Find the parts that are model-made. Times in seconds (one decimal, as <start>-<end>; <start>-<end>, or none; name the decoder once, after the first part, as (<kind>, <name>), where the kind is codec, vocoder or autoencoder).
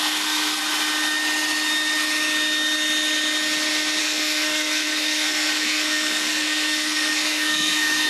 0.0-0.6 (codec, SNAC); 4.0-8.1